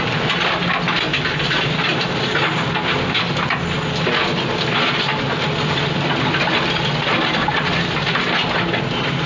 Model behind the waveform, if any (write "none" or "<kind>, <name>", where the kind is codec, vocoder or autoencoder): none